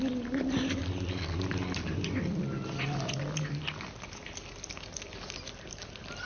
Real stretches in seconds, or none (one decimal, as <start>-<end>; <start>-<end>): 0.0-6.3